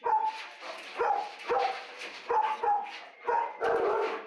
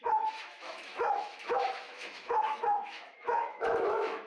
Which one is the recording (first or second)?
first